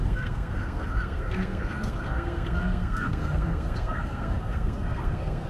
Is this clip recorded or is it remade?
remade